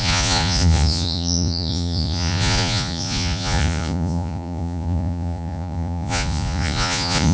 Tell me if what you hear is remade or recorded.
remade